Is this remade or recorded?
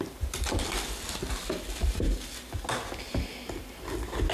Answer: recorded